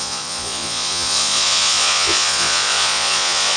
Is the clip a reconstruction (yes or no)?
yes